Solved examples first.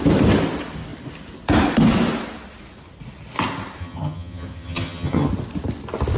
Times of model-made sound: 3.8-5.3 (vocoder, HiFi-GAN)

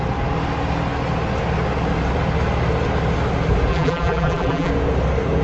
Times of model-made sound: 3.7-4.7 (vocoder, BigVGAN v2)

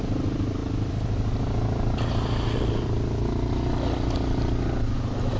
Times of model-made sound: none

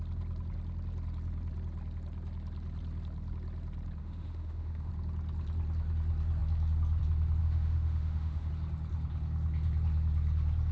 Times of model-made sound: 4.0-4.9 (autoencoder, DAC-VAE); 7.4-8.5